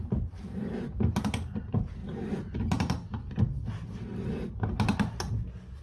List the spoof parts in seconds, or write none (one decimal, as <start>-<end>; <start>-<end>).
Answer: none